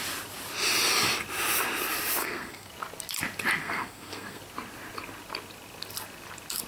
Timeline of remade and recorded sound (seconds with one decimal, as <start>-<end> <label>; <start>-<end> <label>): 0.0-2.2 recorded; 2.2-2.7 remade; 2.7-3.6 recorded; 3.6-4.4 remade; 4.4-6.7 recorded